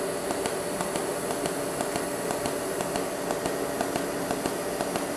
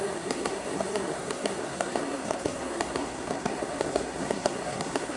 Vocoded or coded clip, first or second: second